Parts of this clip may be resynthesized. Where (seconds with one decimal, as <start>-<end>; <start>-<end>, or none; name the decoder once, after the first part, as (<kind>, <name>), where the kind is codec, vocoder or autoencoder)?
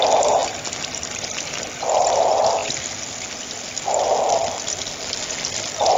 none